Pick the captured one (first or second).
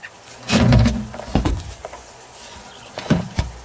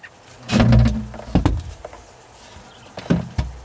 second